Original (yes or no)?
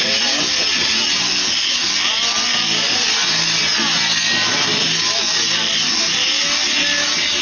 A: yes